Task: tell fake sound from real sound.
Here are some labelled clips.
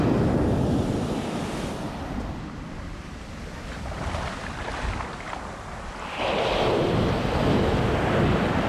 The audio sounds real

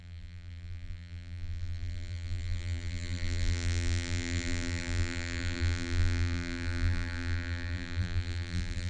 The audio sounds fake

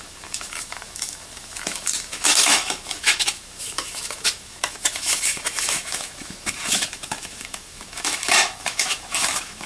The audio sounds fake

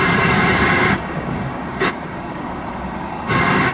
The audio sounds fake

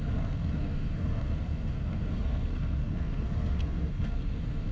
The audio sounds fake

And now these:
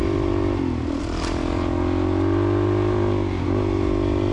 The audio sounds real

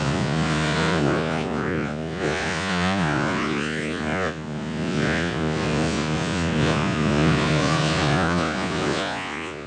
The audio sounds fake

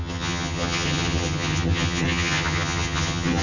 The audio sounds fake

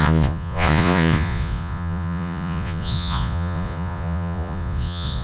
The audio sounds fake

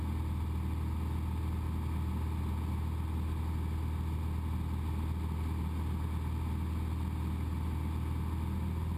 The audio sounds real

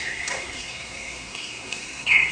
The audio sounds fake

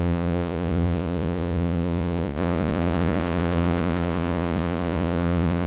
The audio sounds fake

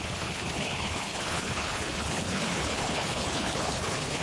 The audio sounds fake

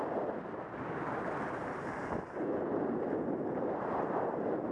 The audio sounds real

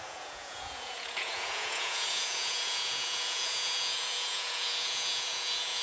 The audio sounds fake